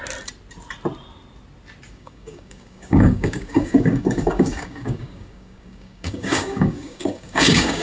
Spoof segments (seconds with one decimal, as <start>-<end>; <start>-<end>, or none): 1.9-7.8